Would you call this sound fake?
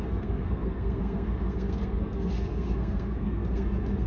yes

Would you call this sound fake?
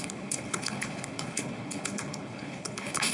yes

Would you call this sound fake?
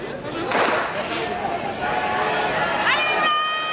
no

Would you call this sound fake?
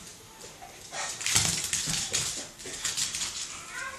no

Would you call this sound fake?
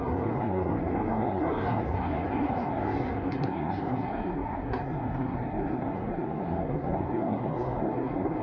yes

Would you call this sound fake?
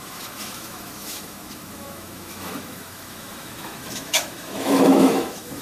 yes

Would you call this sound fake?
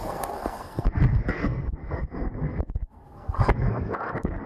yes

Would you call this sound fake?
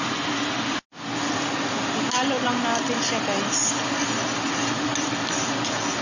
no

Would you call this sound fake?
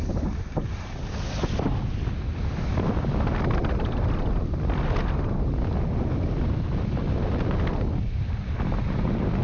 no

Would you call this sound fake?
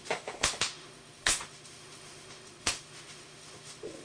yes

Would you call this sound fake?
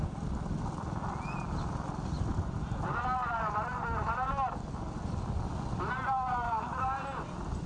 no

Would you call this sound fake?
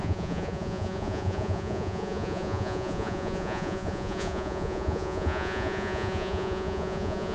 yes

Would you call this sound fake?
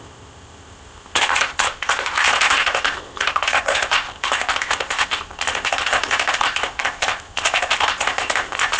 yes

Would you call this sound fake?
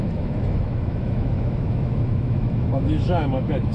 yes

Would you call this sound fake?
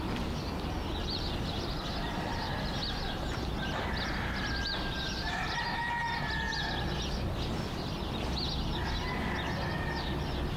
no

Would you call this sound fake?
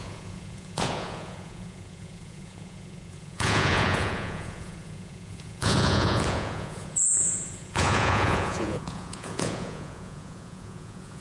yes